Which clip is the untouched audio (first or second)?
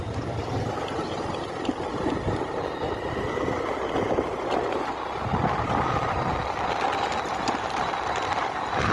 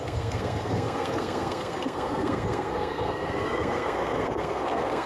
first